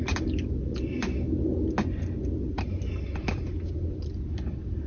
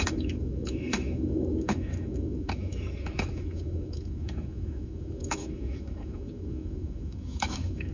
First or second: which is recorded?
first